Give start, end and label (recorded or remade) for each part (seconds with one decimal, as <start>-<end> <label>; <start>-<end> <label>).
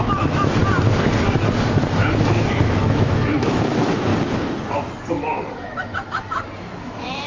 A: 0.0-0.6 remade; 0.6-2.3 recorded; 2.3-4.1 remade; 4.1-5.1 recorded; 5.1-5.9 remade; 5.9-6.8 recorded; 6.8-7.3 remade